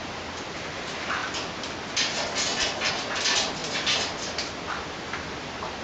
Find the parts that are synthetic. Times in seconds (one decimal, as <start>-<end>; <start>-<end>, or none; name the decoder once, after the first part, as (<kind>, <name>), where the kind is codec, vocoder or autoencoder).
none